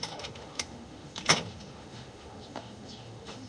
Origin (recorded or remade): remade